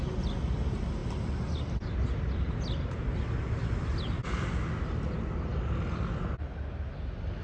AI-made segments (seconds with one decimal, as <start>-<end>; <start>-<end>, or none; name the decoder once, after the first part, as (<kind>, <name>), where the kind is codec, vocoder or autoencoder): none